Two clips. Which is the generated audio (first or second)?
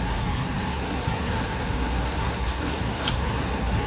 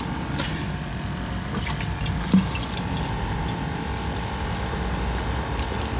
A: first